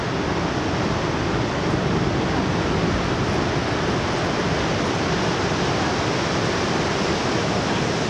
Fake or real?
real